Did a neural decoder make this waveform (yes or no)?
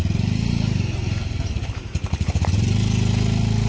no